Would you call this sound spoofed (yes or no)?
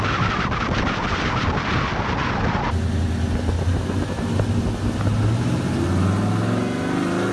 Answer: no